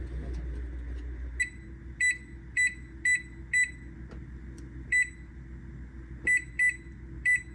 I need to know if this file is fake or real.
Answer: real